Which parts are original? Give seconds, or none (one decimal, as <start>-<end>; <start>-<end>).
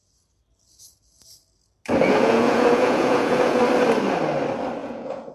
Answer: 0.0-2.0; 3.6-4.8